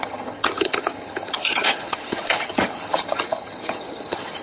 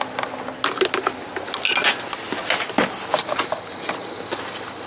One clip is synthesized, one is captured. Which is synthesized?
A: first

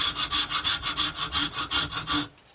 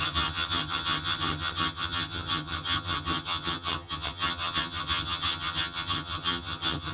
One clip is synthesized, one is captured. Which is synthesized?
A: second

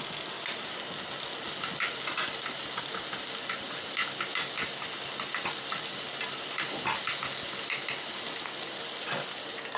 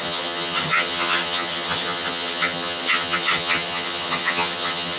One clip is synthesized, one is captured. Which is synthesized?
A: second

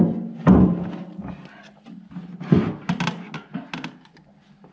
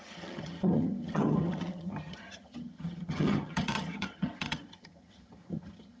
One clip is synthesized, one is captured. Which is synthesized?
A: second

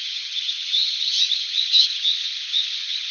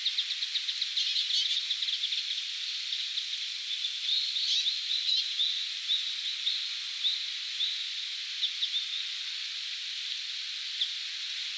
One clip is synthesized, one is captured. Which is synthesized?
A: first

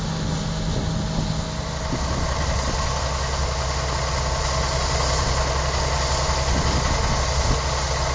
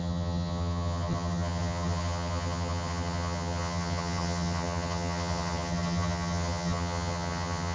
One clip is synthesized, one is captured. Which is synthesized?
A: second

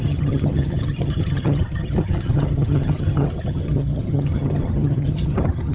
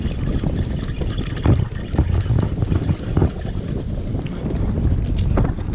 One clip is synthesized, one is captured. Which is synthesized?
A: first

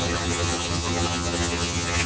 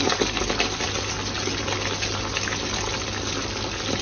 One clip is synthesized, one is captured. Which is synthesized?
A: first